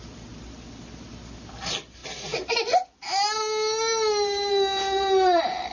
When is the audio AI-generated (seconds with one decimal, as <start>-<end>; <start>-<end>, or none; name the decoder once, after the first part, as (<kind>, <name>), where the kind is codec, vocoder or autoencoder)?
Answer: none